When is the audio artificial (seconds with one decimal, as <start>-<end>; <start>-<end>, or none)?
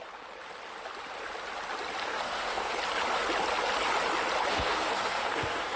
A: 2.0-2.7; 4.5-5.8